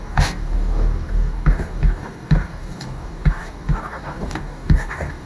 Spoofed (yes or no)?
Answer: yes